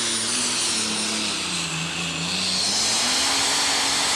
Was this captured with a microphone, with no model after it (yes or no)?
yes